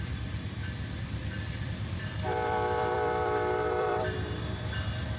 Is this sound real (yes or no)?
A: no